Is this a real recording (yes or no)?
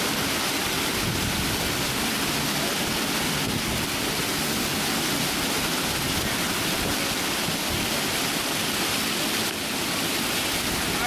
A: yes